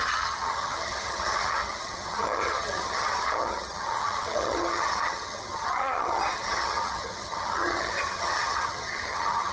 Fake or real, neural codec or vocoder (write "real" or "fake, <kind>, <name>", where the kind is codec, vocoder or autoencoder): fake, vocoder, HiFi-GAN